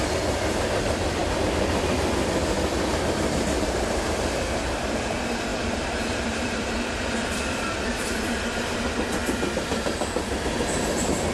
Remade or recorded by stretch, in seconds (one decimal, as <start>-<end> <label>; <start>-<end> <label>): 0.0-1.2 remade; 1.2-4.1 recorded; 4.1-11.3 remade